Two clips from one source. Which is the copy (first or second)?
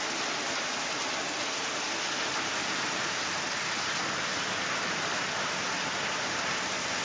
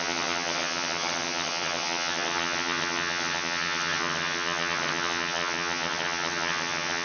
second